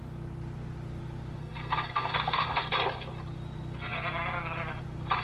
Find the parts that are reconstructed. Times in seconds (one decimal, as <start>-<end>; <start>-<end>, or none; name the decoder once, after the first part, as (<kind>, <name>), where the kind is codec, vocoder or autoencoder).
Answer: 1.4-2.7 (codec, SNAC)